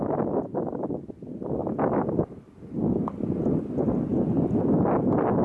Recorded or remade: recorded